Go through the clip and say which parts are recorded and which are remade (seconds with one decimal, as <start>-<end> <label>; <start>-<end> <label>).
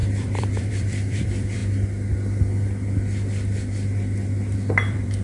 0.0-1.6 remade; 1.6-4.7 recorded; 4.7-5.2 remade